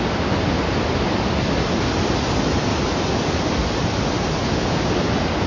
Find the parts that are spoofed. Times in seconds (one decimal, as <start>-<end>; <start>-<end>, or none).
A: none